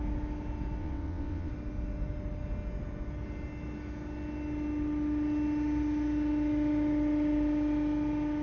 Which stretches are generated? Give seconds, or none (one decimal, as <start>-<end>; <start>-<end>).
0.8-1.5